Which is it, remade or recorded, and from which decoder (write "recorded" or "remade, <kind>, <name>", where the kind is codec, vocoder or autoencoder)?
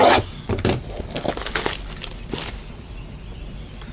recorded